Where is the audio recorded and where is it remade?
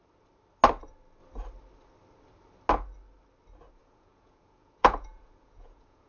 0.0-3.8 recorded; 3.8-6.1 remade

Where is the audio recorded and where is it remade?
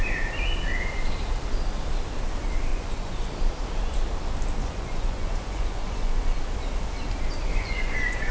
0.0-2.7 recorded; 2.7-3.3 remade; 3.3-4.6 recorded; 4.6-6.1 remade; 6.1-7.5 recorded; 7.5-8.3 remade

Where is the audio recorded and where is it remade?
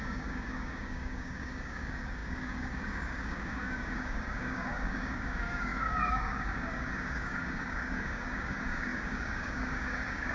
0.0-10.3 remade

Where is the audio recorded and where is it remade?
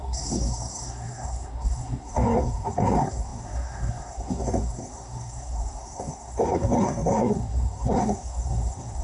0.0-9.0 remade